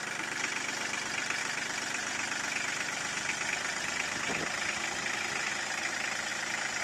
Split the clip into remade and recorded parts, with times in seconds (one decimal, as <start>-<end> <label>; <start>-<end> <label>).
0.0-6.8 recorded